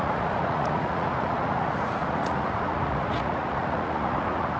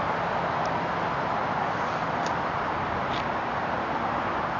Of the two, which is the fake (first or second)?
first